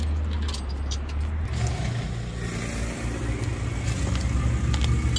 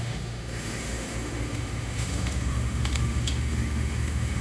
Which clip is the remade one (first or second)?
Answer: second